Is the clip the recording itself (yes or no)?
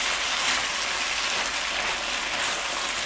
yes